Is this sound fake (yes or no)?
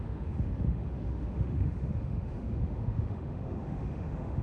yes